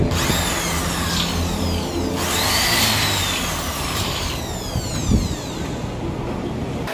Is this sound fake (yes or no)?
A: no